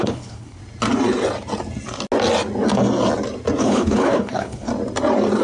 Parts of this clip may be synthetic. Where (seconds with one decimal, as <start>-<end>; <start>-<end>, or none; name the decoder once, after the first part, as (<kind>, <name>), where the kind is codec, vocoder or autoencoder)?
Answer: 0.0-0.6 (codec, HILCodec); 3.6-4.7